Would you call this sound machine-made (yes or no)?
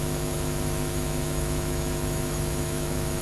yes